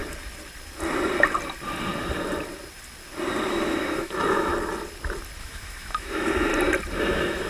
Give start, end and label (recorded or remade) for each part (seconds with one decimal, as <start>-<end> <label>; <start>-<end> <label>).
0.0-3.5 recorded; 3.5-4.5 remade; 4.5-5.4 recorded; 5.4-6.5 remade; 6.5-7.0 recorded; 7.0-7.5 remade